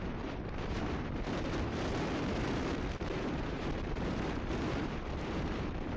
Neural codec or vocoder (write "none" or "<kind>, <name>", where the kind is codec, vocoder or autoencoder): vocoder, BigVGAN v2